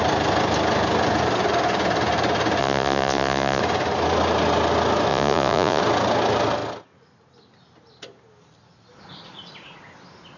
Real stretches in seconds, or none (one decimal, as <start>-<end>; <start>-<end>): 0.0-2.6; 3.6-5.1; 5.8-10.4